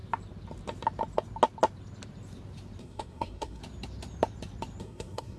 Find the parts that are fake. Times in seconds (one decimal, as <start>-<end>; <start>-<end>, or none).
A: 2.8-3.6; 4.8-5.4